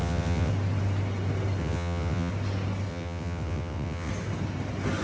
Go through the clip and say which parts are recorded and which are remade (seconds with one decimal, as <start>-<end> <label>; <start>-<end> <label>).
0.0-0.5 remade; 0.5-1.6 recorded; 1.6-2.3 remade; 2.3-2.9 recorded; 2.9-4.1 remade; 4.1-5.0 recorded